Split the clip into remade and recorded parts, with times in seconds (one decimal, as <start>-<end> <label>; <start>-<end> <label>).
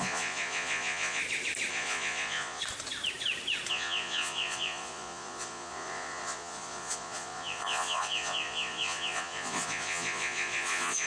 0.0-1.2 remade; 1.2-1.7 recorded; 1.7-2.6 remade; 2.6-3.7 recorded; 3.7-11.1 remade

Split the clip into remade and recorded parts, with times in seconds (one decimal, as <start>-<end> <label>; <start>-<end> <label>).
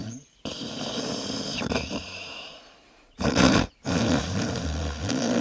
0.0-0.8 remade; 0.8-1.5 recorded; 1.5-4.7 remade; 4.7-5.4 recorded